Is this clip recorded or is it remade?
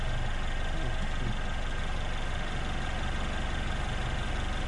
recorded